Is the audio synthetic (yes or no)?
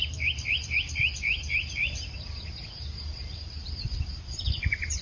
yes